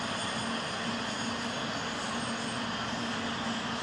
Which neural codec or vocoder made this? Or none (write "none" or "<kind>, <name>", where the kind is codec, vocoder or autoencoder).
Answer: none